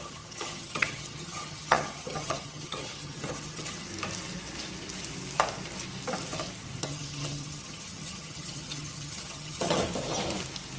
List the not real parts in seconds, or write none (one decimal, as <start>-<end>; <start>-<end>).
0.0-3.9; 6.8-9.8

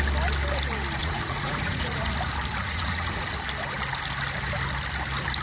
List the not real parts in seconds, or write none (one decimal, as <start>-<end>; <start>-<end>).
1.0-2.1; 2.6-3.3

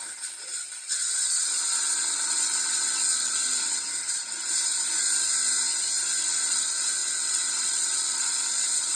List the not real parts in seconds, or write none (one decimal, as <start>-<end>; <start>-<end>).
0.0-4.2; 6.5-9.0

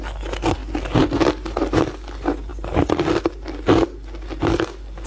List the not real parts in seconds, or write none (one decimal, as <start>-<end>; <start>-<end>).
none

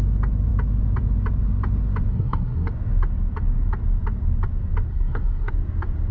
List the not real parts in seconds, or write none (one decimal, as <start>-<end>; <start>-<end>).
2.1-2.7; 4.9-5.5

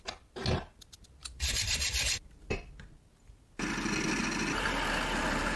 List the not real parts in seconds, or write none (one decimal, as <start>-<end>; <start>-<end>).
1.2-2.5

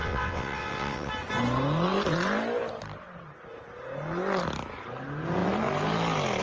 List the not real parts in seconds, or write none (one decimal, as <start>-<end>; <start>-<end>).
0.0-1.1